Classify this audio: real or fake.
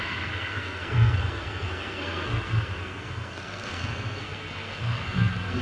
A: fake